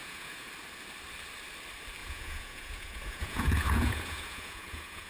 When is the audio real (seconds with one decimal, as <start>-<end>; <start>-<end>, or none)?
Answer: 0.5-2.0